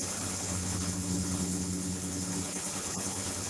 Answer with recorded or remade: remade